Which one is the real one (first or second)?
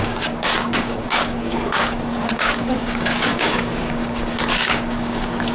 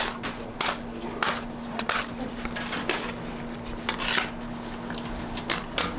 second